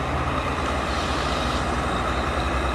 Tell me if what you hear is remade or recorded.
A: remade